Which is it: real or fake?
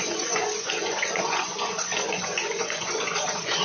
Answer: fake